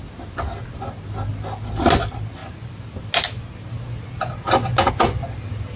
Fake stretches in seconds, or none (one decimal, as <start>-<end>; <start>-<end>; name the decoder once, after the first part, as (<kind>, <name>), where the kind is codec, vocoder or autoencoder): none